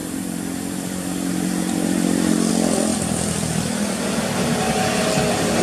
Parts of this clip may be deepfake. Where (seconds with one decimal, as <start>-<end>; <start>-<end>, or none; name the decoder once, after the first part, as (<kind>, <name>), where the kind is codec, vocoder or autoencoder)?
0.0-2.5 (vocoder, BigVGAN v2)